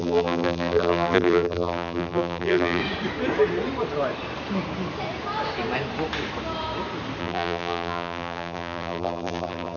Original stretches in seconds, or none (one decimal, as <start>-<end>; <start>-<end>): 2.8-7.2